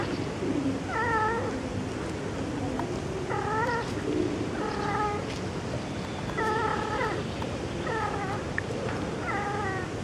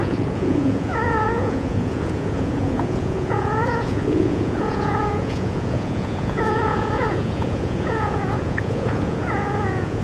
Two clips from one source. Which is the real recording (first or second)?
first